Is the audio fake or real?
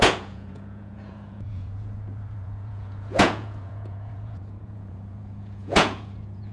fake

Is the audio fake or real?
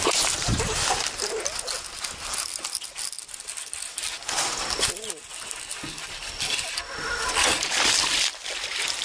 real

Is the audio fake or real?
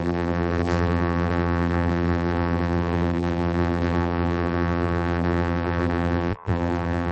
fake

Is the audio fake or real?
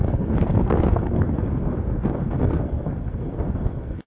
fake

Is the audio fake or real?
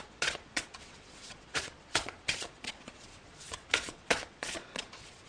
fake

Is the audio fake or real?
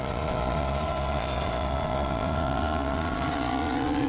fake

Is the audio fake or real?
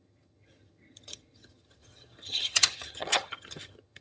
fake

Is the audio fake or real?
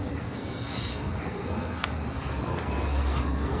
fake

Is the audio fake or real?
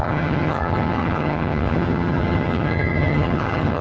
fake